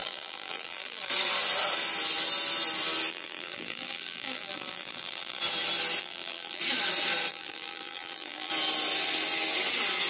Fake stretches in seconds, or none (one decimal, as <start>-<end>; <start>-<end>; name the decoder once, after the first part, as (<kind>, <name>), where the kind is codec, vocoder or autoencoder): 0.0-1.1 (vocoder, BigVGAN v2); 3.1-5.4; 6.0-6.6; 7.3-8.5